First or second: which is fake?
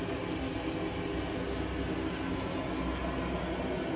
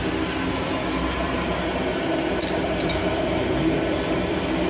second